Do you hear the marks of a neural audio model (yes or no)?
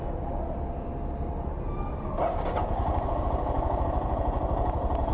no